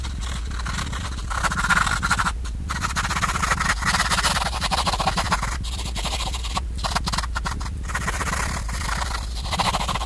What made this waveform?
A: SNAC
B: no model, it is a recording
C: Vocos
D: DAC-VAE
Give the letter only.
B